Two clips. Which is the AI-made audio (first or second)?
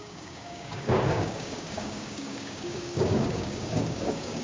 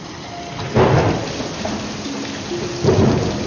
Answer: first